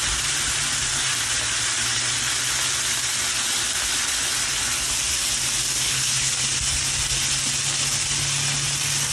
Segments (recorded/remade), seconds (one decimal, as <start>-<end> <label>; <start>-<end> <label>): 0.0-5.8 recorded; 5.8-6.3 remade; 6.3-9.1 recorded